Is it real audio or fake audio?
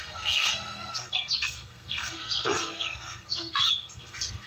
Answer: fake